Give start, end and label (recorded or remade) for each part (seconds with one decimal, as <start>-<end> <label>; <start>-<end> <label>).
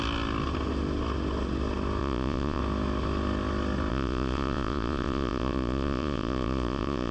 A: 0.0-2.0 recorded; 2.0-2.6 remade; 2.6-3.9 recorded; 3.9-7.1 remade